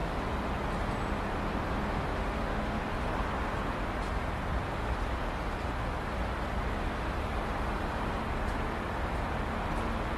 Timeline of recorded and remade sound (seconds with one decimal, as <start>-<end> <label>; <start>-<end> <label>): 0.0-2.1 recorded; 2.1-2.8 remade; 2.8-10.2 recorded